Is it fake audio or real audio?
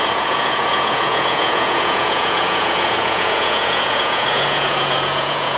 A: fake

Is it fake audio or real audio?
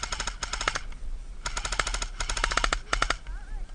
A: real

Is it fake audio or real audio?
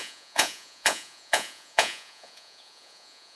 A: fake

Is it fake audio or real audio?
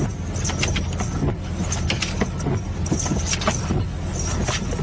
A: real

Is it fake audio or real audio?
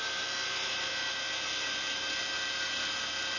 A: real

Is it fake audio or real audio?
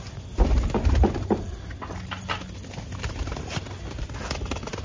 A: real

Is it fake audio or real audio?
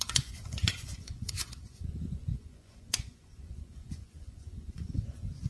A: fake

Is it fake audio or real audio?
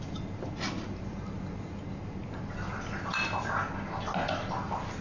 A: real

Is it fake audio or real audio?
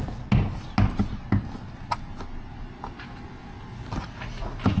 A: real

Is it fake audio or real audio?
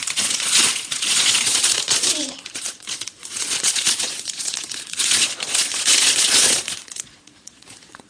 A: fake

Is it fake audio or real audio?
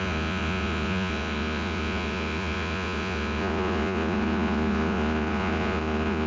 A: fake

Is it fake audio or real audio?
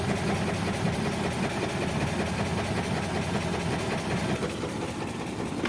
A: real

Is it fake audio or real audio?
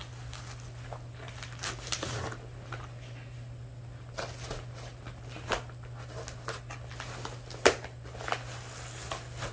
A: real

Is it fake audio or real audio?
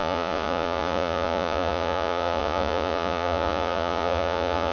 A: fake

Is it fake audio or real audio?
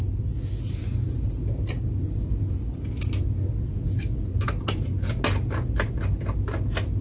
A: real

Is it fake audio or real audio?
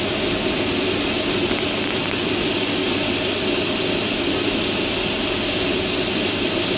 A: real